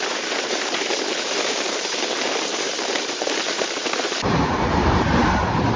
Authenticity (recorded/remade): remade